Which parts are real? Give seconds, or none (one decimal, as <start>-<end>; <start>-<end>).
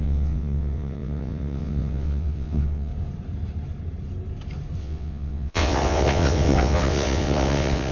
2.9-4.8